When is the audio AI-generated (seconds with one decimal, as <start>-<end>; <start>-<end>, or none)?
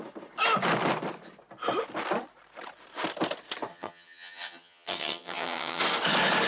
3.7-5.8